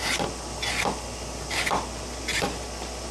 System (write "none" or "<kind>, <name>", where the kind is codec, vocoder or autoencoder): none